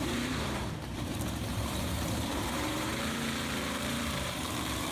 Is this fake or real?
fake